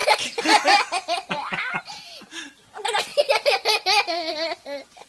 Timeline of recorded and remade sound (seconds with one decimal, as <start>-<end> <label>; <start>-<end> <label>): 0.0-5.1 recorded